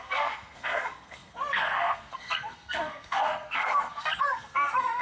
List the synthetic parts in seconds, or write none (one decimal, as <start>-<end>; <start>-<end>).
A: 0.0-5.0